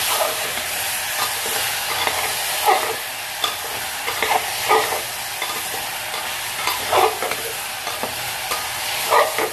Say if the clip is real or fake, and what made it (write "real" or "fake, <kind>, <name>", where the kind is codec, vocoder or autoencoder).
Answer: real